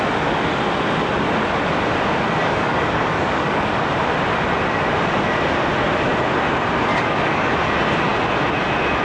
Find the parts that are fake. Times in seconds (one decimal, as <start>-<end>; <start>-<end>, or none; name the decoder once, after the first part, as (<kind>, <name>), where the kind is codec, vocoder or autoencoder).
2.4-3.8 (codec, DAC); 6.9-7.5